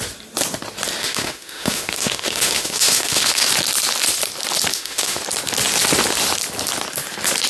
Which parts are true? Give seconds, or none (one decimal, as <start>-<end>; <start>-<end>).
0.0-1.0; 3.5-4.7; 5.2-7.5